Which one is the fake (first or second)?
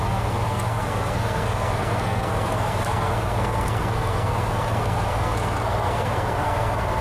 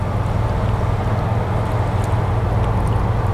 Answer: first